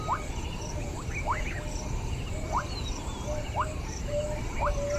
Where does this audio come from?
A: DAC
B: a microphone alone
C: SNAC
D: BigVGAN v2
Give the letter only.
B